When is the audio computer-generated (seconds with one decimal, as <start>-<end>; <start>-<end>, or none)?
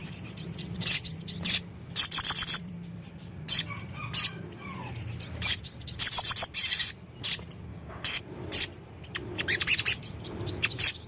7.7-8.2